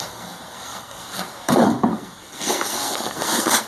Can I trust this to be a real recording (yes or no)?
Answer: no